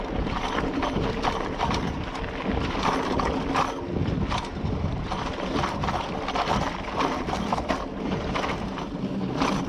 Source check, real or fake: real